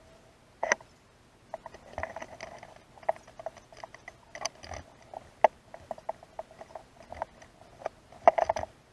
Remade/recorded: recorded